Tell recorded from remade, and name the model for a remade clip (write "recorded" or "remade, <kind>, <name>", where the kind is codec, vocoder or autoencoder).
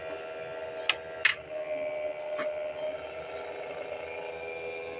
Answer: recorded